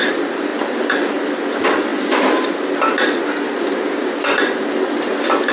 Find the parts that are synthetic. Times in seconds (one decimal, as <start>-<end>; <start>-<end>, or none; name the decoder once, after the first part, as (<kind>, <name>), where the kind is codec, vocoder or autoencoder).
none